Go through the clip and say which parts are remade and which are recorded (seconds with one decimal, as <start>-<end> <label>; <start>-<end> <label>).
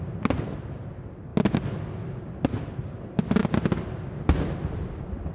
0.0-5.3 recorded